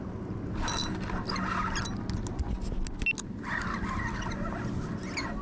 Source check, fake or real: real